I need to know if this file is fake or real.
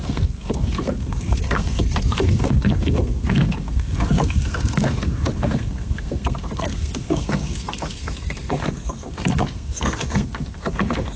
fake